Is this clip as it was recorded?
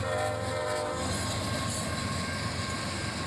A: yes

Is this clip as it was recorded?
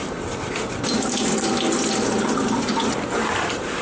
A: yes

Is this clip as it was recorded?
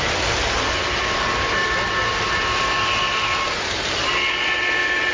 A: yes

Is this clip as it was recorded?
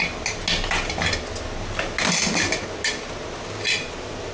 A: yes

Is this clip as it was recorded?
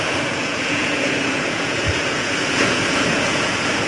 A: no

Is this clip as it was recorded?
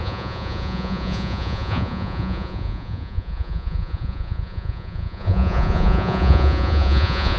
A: no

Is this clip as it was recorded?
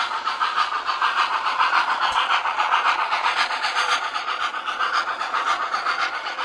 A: no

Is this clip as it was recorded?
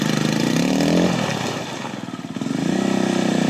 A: yes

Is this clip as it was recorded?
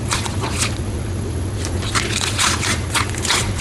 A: no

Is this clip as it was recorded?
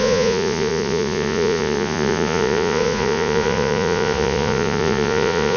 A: no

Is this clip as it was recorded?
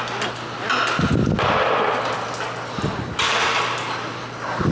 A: yes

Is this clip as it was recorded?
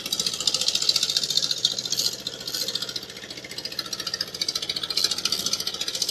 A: yes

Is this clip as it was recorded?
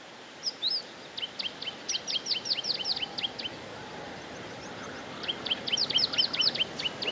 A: yes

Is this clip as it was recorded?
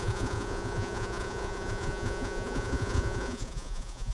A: no